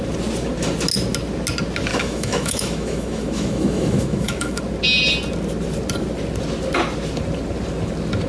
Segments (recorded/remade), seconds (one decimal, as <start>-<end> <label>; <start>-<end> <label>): 0.0-1.9 recorded; 1.9-4.6 remade; 4.6-8.3 recorded